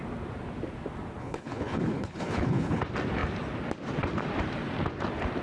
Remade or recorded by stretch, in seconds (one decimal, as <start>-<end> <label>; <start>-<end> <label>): 0.0-1.2 recorded; 1.2-2.8 remade; 2.8-5.4 recorded